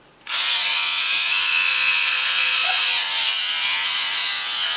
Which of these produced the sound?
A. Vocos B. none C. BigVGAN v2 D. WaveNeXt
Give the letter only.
A